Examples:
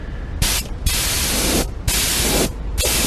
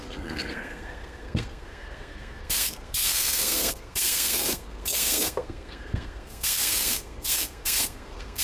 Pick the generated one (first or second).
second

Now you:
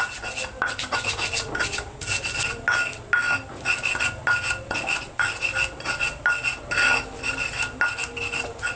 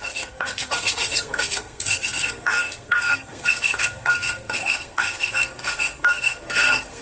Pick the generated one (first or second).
second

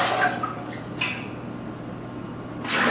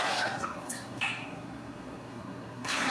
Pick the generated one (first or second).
second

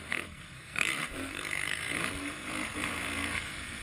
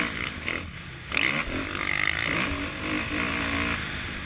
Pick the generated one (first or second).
first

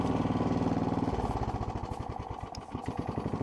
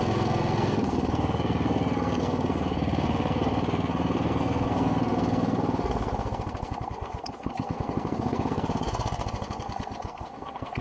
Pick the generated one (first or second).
second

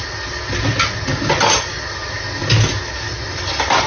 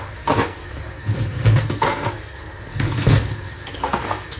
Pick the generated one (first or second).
second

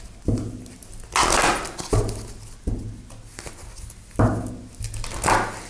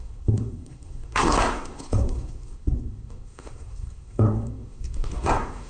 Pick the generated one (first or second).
second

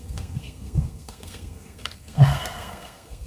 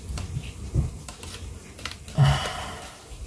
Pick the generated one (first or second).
first